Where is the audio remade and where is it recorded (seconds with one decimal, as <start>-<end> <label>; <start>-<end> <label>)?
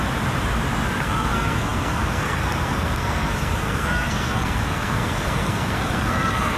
0.0-1.0 recorded; 1.0-6.6 remade